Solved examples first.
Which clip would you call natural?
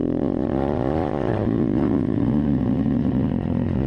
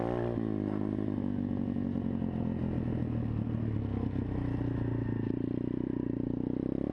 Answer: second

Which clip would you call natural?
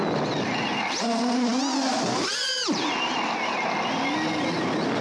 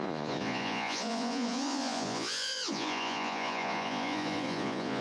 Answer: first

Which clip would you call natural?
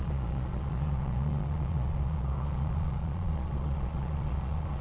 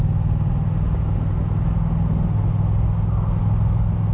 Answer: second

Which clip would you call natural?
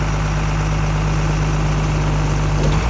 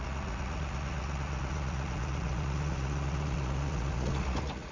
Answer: first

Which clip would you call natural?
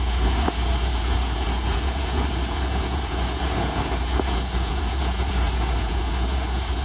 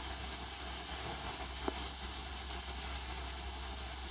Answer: second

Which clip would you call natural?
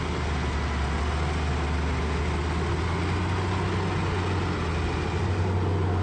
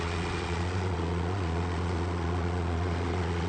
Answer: first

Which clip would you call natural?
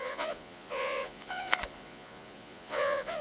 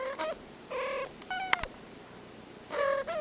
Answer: second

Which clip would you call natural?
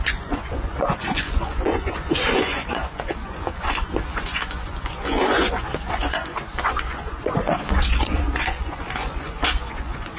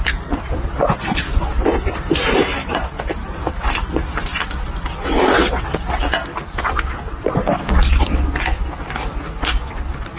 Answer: second